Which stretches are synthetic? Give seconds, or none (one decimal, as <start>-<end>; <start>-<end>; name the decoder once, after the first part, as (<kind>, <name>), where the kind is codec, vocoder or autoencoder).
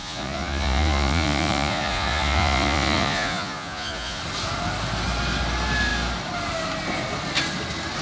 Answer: 0.0-4.2 (vocoder, Vocos)